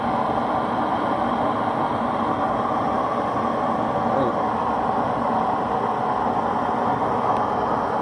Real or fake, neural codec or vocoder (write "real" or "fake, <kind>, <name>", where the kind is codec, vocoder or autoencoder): real